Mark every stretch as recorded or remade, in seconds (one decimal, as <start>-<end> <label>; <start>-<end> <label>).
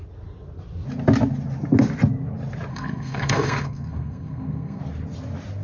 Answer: 0.0-2.7 recorded; 2.7-4.8 remade; 4.8-5.6 recorded